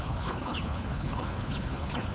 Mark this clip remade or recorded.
remade